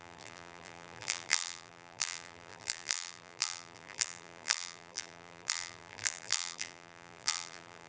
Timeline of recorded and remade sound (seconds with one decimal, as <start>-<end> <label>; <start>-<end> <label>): 0.0-7.9 remade